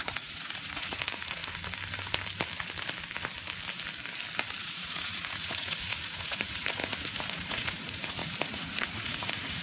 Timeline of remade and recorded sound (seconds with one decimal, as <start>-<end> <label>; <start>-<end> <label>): 0.0-1.4 remade; 1.4-4.6 recorded; 4.6-9.6 remade